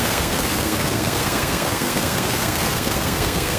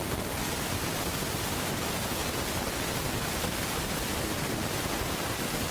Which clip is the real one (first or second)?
second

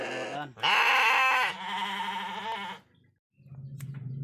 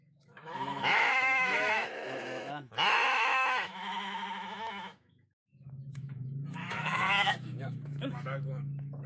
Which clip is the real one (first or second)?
first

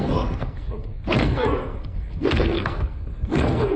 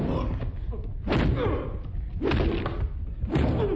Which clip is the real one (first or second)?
second